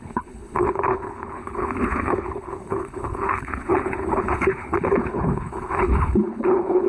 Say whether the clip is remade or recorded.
remade